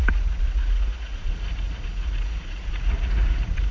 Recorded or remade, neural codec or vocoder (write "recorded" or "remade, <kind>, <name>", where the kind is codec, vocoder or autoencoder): remade, vocoder, Vocos